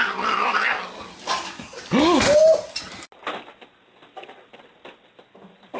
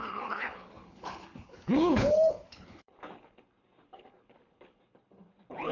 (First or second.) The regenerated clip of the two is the second